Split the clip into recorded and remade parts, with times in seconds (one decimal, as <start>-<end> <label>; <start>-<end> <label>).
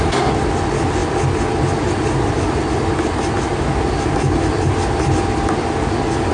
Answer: 0.0-6.3 recorded